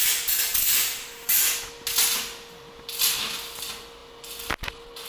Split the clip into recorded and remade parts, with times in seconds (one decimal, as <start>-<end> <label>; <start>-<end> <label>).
0.0-0.5 recorded; 0.5-1.7 remade; 1.7-5.1 recorded